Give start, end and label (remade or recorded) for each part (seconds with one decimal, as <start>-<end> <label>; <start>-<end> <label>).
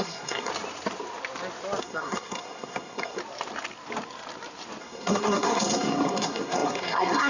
0.0-0.5 remade; 0.5-1.8 recorded; 1.8-3.2 remade; 3.2-4.8 recorded; 4.8-7.3 remade